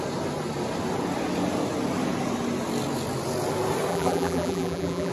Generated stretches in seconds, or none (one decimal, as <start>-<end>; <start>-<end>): 3.9-5.1